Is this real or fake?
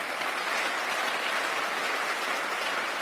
real